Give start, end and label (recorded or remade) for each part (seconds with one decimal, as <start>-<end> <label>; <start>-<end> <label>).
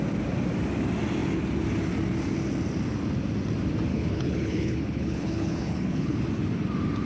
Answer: 0.0-3.9 recorded; 3.9-6.2 remade; 6.2-7.0 recorded